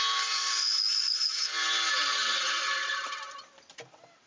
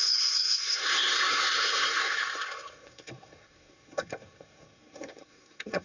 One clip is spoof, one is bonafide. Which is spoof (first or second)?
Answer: second